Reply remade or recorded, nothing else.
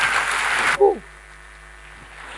recorded